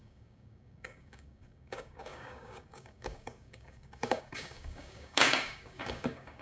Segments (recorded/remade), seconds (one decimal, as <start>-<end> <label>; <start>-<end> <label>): 0.0-6.4 remade